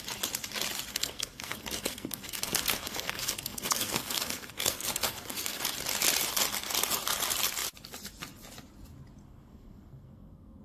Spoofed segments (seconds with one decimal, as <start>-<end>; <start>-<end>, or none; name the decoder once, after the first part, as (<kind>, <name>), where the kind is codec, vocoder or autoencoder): 0.9-5.6 (codec, SNAC); 9.2-10.6